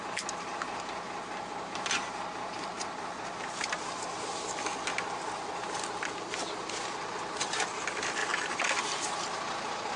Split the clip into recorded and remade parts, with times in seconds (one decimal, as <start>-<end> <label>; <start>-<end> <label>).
0.0-10.0 recorded